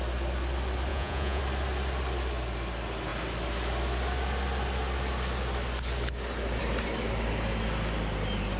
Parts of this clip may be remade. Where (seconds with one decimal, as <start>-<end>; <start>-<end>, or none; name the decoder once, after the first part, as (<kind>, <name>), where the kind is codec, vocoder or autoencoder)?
0.9-1.4 (vocoder, Vocos)